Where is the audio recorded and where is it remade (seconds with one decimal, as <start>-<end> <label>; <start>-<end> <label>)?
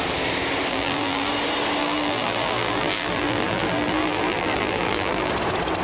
0.0-0.7 recorded; 0.7-1.3 remade; 1.3-1.8 recorded; 1.8-5.3 remade; 5.3-5.8 recorded